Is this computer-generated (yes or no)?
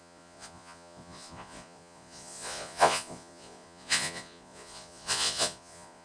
yes